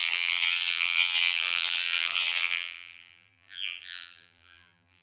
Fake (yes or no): yes